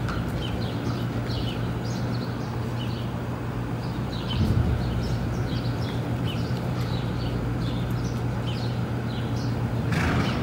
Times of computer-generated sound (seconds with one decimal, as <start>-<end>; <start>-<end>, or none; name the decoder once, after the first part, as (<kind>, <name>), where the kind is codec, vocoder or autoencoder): 3.8-7.1 (vocoder, BigVGAN v2)